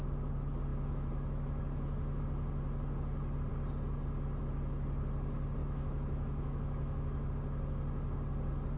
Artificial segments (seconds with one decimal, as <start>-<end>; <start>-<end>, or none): 0.7-2.2; 5.6-7.3